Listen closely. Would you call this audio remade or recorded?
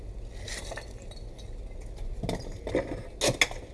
recorded